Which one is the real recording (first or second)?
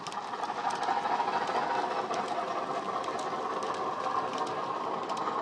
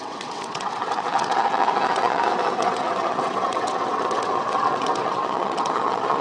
first